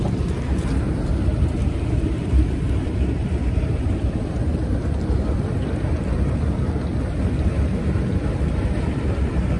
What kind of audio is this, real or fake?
fake